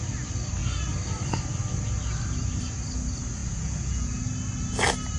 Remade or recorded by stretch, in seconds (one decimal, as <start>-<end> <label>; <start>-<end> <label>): 0.0-3.4 recorded; 3.4-4.2 remade; 4.2-5.2 recorded